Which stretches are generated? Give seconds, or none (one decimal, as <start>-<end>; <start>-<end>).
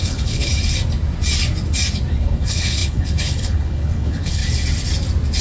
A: 0.0-0.5; 2.1-4.4